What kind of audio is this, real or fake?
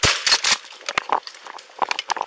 real